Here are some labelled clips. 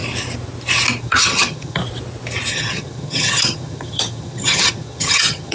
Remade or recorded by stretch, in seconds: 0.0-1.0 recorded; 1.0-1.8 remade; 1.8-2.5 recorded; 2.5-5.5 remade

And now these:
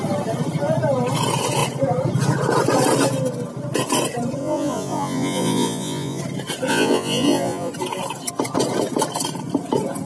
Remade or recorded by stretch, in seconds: 0.0-4.4 recorded; 4.4-6.2 remade; 6.2-6.7 recorded; 6.7-7.7 remade; 7.7-10.1 recorded

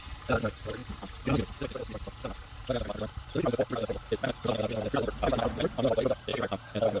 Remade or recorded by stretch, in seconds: 0.0-6.3 recorded; 6.3-7.0 remade

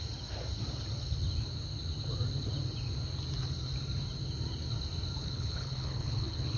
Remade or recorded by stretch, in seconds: 0.0-5.2 recorded; 5.2-6.6 remade